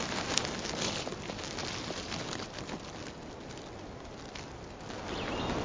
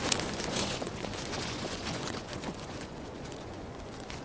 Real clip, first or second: first